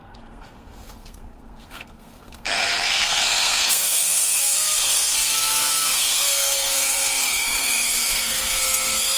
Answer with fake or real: fake